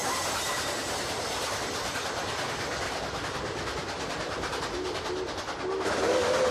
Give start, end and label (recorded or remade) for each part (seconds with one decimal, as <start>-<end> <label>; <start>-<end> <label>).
0.0-6.5 recorded